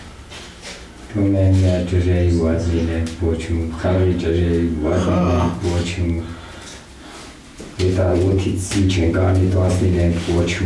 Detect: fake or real real